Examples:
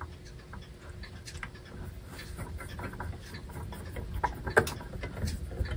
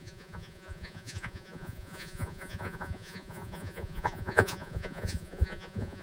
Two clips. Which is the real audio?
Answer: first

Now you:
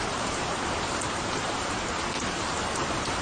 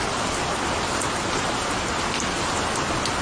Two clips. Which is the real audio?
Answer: second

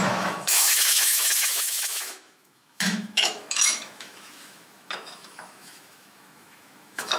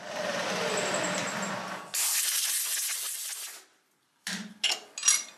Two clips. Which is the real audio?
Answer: second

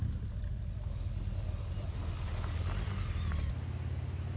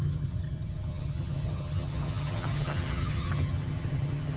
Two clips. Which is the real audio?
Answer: first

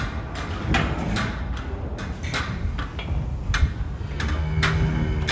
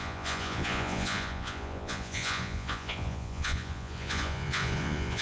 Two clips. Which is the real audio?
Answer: first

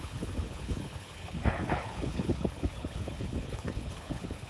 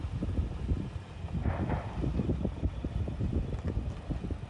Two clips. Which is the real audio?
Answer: second